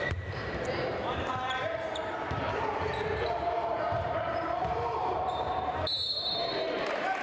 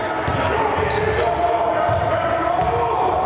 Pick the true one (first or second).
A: second